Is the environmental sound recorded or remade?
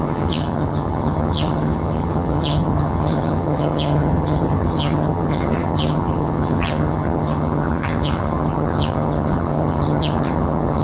remade